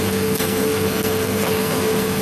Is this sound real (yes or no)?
no